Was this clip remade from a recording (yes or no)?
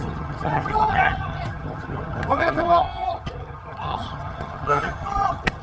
yes